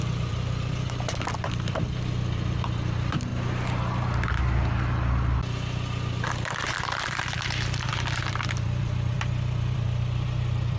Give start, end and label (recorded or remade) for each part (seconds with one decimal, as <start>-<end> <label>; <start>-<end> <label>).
0.0-3.3 remade; 3.3-6.3 recorded; 6.3-10.8 remade